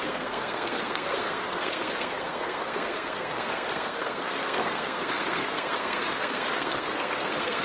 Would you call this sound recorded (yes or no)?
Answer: no